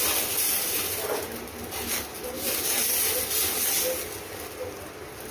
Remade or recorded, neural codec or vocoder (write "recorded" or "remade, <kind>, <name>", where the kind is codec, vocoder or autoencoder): recorded